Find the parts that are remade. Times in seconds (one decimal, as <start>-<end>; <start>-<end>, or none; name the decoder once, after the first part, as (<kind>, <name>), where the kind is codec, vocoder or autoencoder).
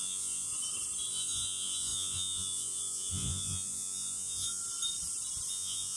0.0-0.5 (vocoder, Vocos); 1.1-4.6; 5.5-6.0